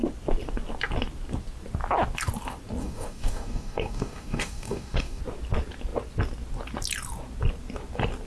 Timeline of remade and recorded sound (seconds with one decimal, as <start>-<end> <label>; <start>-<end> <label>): 0.0-2.8 recorded; 2.8-5.2 remade; 5.2-8.3 recorded